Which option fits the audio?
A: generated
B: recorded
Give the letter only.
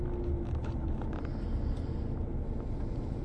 B